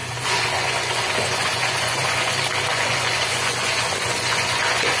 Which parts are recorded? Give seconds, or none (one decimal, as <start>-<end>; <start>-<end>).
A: 2.3-2.7